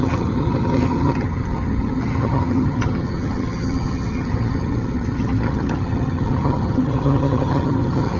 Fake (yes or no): yes